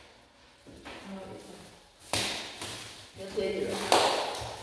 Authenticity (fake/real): real